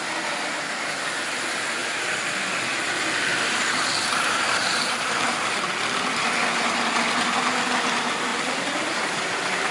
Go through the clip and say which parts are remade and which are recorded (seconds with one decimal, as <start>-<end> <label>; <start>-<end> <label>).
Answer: 0.0-3.3 recorded; 3.3-5.6 remade; 5.6-8.3 recorded; 8.3-9.2 remade; 9.2-9.7 recorded